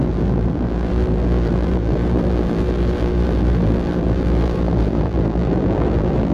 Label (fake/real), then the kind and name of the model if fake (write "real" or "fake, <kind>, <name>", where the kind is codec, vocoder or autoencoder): fake, vocoder, BigVGAN v2